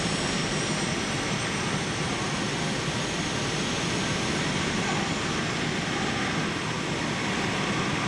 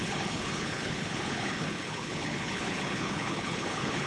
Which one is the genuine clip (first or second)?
first